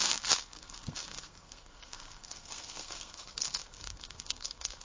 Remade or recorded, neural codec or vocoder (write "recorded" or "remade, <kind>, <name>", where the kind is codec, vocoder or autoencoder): remade, codec, SNAC